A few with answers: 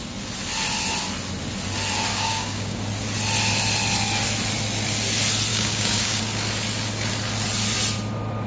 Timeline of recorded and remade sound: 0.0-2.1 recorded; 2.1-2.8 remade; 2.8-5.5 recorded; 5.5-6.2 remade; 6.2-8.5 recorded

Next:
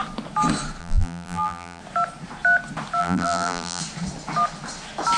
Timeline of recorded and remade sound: 0.0-0.8 recorded; 0.8-1.8 remade; 1.8-3.0 recorded; 3.0-3.8 remade; 3.8-5.2 recorded